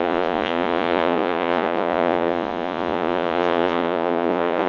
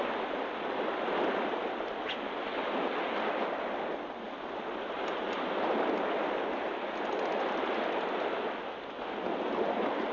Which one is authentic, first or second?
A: second